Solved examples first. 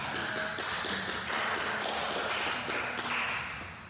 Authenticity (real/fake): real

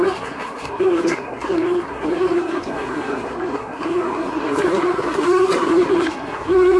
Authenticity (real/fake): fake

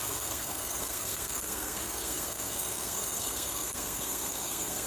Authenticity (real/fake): fake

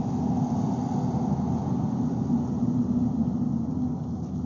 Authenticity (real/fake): real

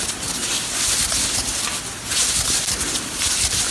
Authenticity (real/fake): real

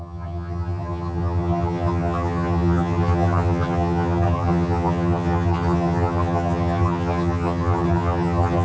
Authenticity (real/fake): fake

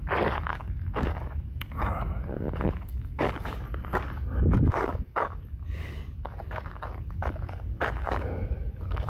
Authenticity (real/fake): fake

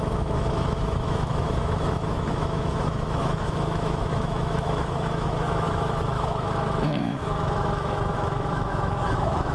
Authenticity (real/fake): fake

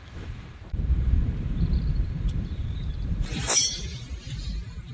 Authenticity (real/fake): fake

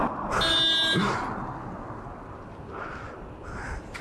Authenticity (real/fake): real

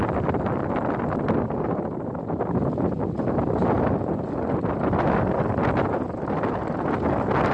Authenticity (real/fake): real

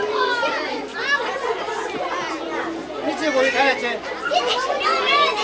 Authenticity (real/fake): real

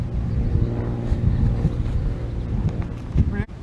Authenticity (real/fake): real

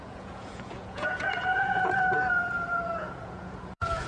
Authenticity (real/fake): fake